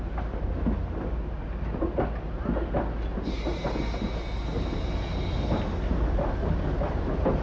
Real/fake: real